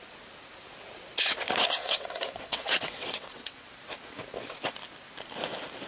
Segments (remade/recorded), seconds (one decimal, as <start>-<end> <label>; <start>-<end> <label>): 0.0-1.8 recorded; 1.8-3.7 remade; 3.7-5.9 recorded